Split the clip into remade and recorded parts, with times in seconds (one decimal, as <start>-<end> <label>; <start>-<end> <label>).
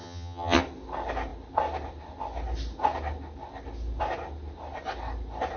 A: 0.0-0.6 remade; 0.6-5.6 recorded